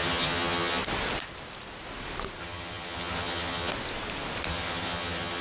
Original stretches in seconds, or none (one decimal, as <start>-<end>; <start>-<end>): 0.8-2.4; 3.7-4.5